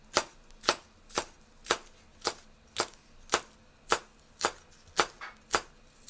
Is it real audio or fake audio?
real